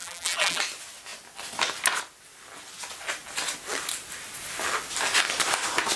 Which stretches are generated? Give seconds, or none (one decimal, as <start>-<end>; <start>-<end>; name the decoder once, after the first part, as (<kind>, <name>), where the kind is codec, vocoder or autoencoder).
0.0-0.6 (vocoder, BigVGAN v2)